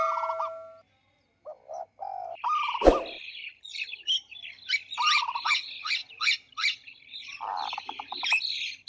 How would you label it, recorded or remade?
recorded